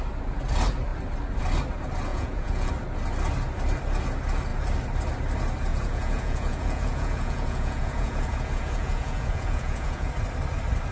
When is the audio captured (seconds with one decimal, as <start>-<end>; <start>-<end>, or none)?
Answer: 0.0-2.1; 2.7-5.7; 10.1-10.9